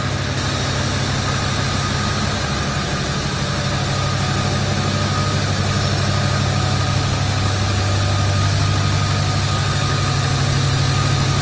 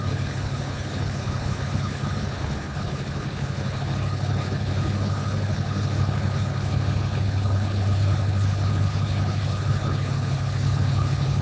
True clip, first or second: first